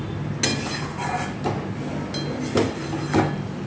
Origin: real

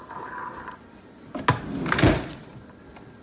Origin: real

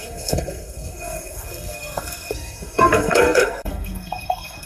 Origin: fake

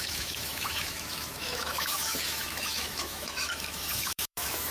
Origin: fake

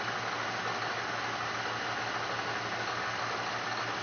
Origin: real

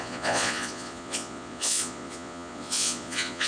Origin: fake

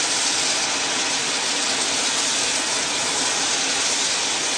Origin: real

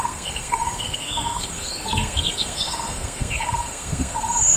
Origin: fake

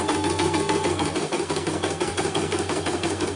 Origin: fake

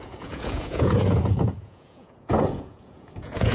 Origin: fake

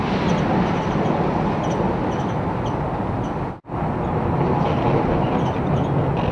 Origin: real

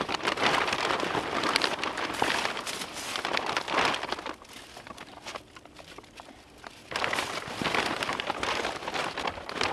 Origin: real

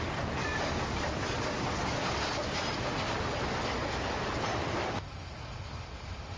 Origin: real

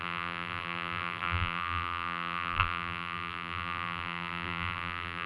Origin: fake